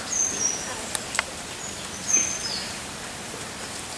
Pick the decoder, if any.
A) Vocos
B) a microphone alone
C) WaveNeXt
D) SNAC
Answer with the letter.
B